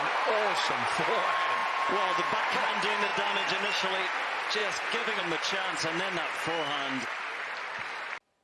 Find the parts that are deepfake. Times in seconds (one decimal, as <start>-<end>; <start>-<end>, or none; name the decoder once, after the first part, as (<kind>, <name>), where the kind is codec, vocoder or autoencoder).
1.6-2.4 (vocoder, Vocos); 4.6-5.2